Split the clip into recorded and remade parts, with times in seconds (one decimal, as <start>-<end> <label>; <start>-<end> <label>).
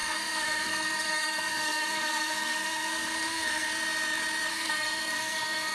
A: 0.0-3.7 remade; 3.7-4.5 recorded; 4.5-5.7 remade